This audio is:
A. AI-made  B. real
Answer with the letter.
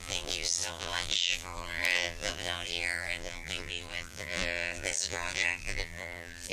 A